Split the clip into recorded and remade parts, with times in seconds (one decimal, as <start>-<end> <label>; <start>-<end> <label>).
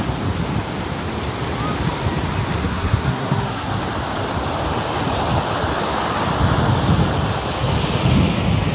0.0-2.6 recorded; 2.6-3.7 remade; 3.7-8.7 recorded